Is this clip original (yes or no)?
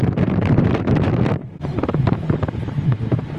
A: no